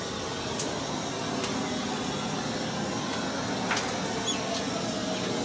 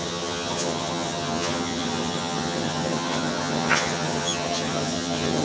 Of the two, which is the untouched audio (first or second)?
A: first